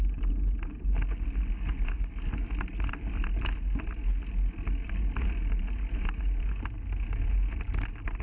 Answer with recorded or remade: recorded